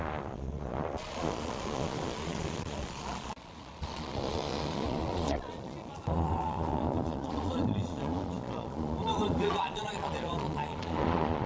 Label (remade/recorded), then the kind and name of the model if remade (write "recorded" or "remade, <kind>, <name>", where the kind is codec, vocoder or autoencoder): remade, vocoder, Vocos